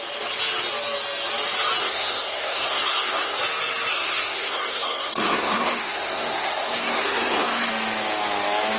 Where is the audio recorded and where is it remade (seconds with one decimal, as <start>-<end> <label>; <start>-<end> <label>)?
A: 0.0-1.8 recorded; 1.8-3.4 remade; 3.4-3.9 recorded; 3.9-7.7 remade; 7.7-8.8 recorded